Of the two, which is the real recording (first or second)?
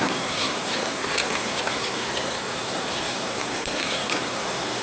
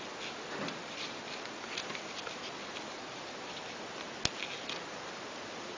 second